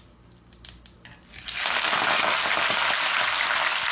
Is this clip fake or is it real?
real